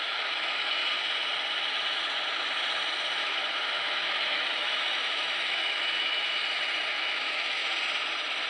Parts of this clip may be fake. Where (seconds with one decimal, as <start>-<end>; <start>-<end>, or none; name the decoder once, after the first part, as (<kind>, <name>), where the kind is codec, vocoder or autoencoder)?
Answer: 0.0-0.8 (autoencoder, DAC-VAE); 3.2-6.4; 6.9-7.6